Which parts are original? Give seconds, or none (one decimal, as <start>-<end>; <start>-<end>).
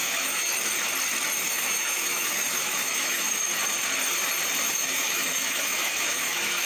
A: 0.5-1.4; 3.5-4.7